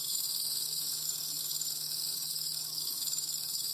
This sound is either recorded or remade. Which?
remade